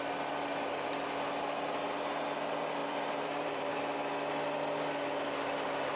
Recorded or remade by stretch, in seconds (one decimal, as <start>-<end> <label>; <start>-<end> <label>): 0.0-2.8 recorded; 2.8-3.8 remade; 3.8-6.0 recorded